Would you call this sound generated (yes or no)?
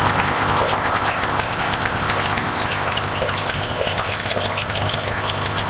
yes